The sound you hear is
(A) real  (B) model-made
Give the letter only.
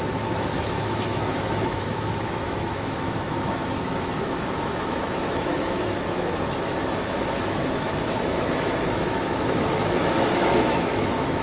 B